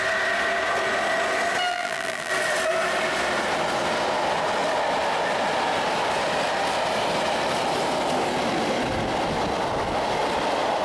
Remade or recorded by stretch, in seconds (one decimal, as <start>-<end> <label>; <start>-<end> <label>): 0.0-1.7 recorded; 1.7-2.3 remade; 2.3-10.8 recorded